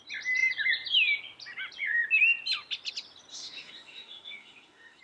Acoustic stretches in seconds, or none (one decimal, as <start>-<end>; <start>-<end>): 0.0-3.3